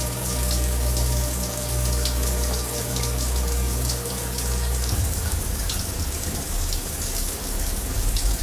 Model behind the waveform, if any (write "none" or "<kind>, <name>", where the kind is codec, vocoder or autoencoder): codec, DAC